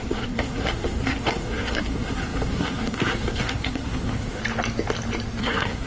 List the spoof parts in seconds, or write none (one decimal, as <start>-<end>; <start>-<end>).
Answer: 0.0-4.4; 5.4-5.9